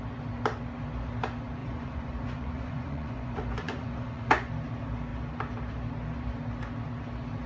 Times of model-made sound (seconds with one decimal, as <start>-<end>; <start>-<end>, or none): 1.6-4.5